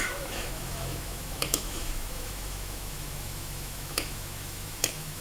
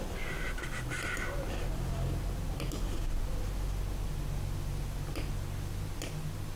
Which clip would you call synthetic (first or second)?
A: first